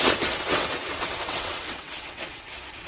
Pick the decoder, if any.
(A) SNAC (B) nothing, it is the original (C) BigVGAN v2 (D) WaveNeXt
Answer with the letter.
D